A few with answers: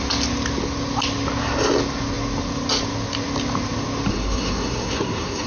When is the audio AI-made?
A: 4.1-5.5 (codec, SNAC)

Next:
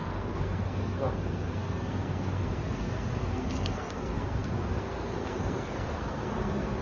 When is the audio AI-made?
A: 0.0-6.8 (codec, SNAC)

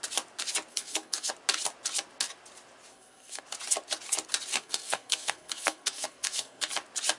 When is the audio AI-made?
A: 0.7-1.3 (codec, SNAC); 2.9-3.4; 4.5-6.7

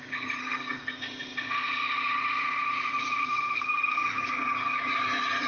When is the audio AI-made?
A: 0.4-1.0 (codec, SNAC); 3.2-4.3

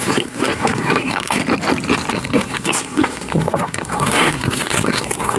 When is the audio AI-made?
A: 0.0-1.4 (codec, SNAC); 2.1-5.4